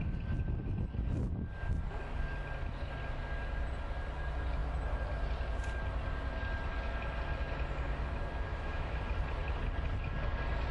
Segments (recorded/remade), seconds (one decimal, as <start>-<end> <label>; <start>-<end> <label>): 0.0-8.5 recorded; 8.5-9.0 remade; 9.0-10.7 recorded